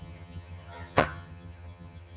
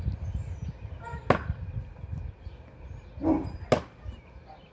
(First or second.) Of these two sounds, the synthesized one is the first